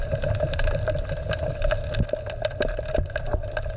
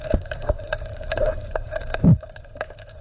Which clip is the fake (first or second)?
second